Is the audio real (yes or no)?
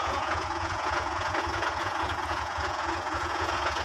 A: no